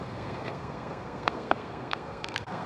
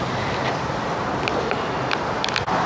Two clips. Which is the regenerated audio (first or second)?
first